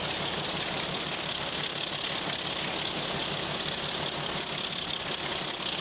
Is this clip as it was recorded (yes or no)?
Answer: yes